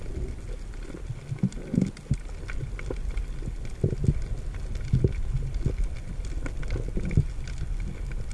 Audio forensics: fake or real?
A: real